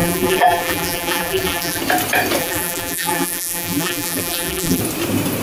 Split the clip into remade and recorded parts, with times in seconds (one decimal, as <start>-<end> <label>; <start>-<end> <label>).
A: 0.0-1.8 remade; 1.8-2.4 recorded; 2.4-4.8 remade; 4.8-5.4 recorded